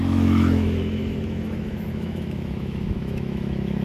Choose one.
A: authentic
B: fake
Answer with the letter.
B